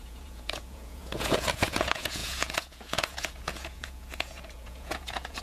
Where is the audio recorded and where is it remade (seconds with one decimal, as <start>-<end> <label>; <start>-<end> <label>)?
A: 0.0-5.4 remade